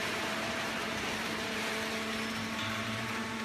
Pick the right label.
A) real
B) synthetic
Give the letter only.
B